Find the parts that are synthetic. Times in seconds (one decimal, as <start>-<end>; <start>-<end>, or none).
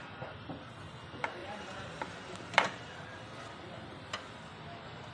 1.4-3.2